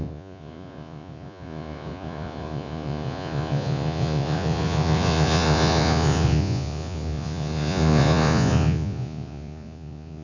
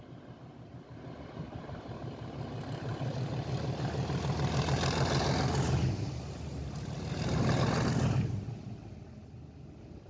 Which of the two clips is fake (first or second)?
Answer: first